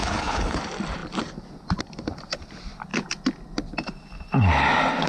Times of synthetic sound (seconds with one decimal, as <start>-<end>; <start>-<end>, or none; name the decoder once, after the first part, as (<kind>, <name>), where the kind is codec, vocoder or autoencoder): 0.0-0.6 (codec, HILCodec)